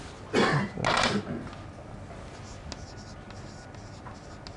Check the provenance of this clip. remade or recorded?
recorded